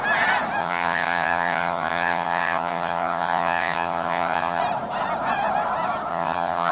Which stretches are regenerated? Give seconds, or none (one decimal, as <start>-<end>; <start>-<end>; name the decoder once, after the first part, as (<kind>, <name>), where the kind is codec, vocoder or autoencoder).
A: 0.6-4.6 (vocoder, HiFi-GAN); 6.1-6.7